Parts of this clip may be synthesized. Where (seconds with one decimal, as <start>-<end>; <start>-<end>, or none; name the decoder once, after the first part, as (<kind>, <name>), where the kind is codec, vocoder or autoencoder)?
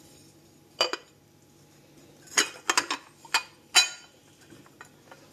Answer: none